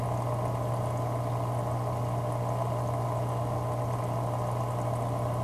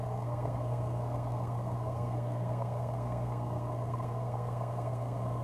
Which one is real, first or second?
first